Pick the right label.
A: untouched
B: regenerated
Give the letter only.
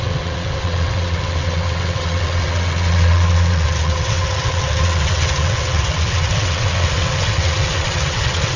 B